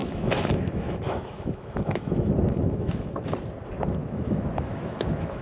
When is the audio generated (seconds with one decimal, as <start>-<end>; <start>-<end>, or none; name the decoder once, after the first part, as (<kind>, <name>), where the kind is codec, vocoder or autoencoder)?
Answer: 0.0-3.2 (autoencoder, DAC-VAE); 4.0-5.4